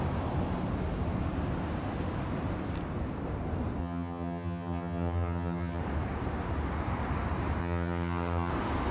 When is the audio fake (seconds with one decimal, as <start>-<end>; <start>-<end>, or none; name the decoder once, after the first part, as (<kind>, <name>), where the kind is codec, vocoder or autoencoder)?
3.8-5.8 (vocoder, HiFi-GAN); 7.6-8.5